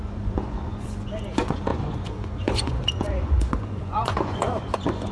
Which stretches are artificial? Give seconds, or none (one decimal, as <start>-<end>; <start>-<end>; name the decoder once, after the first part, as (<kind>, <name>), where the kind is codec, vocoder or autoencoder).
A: 0.0-5.1 (vocoder, Vocos)